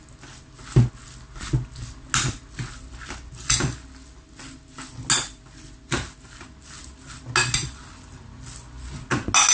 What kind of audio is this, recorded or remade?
recorded